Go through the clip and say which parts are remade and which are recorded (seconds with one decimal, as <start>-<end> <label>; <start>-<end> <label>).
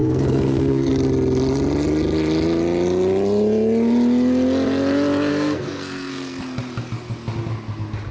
0.0-0.9 remade; 0.9-5.3 recorded; 5.3-6.4 remade; 6.4-8.1 recorded